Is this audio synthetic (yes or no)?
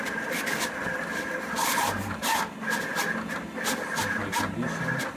no